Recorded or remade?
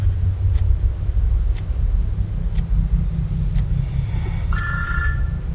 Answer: recorded